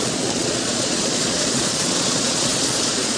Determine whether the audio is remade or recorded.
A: remade